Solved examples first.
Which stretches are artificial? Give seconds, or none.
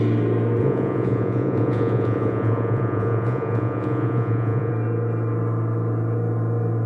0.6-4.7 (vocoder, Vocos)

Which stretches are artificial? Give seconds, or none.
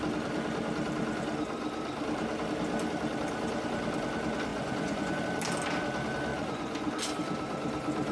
4.5-5.2 (vocoder, Vocos); 6.3-6.9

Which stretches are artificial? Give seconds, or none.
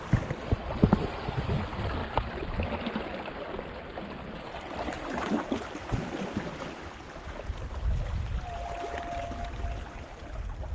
none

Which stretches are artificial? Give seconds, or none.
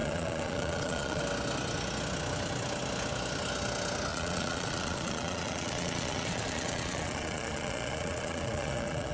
0.0-1.2 (vocoder, Vocos); 4.1-9.1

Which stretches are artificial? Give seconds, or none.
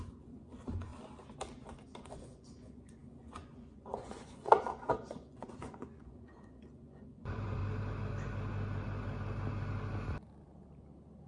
0.0-0.9 (vocoder, Vocos); 2.0-7.6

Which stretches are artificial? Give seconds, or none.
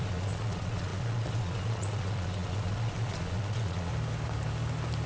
0.0-3.9 (vocoder, Vocos)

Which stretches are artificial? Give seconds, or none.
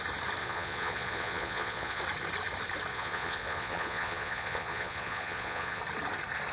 0.4-2.0 (vocoder, Vocos); 2.9-5.8